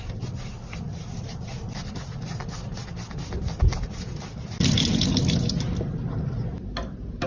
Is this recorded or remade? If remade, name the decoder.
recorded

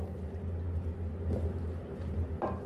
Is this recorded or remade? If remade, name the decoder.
recorded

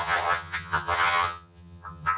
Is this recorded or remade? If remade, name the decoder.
remade, vocoder, HiFi-GAN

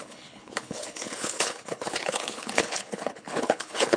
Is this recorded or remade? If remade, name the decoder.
remade, codec, HILCodec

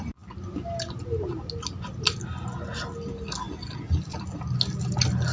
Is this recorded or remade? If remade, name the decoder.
recorded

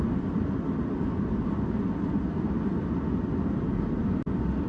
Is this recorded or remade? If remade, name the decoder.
recorded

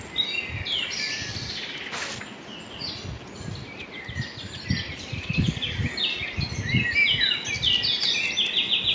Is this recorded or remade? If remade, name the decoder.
recorded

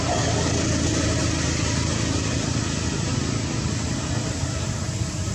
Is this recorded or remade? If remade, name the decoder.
recorded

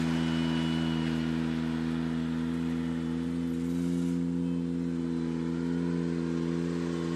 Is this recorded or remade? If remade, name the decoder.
recorded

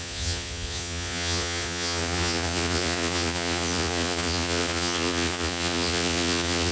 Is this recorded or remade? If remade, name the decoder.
remade, vocoder, Vocos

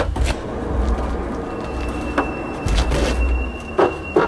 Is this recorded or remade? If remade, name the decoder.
recorded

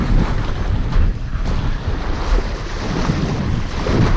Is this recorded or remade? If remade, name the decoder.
recorded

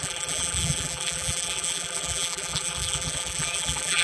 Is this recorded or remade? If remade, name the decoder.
remade, vocoder, BigVGAN v2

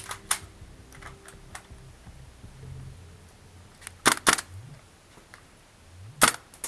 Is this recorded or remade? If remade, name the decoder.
recorded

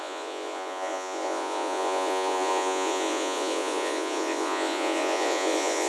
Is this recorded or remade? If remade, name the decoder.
remade, vocoder, Vocos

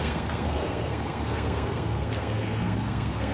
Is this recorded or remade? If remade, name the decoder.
remade, codec, SNAC